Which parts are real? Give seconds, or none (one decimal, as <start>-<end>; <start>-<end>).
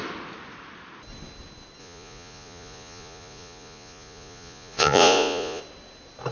0.0-1.8; 5.6-6.3